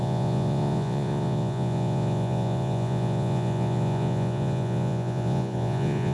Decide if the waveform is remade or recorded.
remade